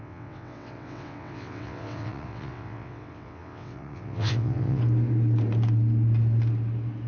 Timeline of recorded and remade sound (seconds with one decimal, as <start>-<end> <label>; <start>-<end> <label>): 0.0-4.8 remade; 4.8-7.1 recorded